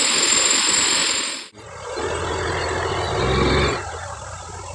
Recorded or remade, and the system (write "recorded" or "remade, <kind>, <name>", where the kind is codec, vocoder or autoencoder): recorded